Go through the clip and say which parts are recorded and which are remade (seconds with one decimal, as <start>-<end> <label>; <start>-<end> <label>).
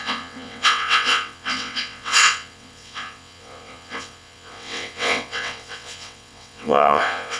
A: 0.0-7.4 remade